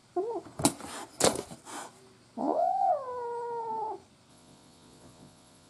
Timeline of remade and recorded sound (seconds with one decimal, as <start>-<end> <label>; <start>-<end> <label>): 0.0-2.4 recorded; 2.4-2.9 remade; 2.9-4.3 recorded; 4.3-5.7 remade